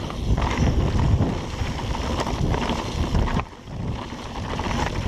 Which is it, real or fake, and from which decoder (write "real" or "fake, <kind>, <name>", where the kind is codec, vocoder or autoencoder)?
fake, vocoder, BigVGAN v2